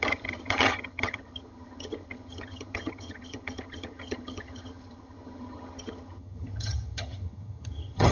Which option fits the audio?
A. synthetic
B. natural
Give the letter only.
A